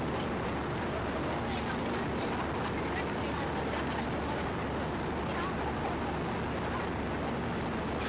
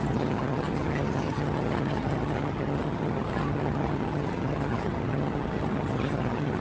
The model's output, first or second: second